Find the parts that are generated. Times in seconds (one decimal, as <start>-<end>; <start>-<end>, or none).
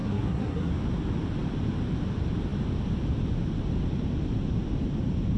0.0-0.7